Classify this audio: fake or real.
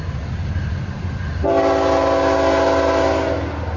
real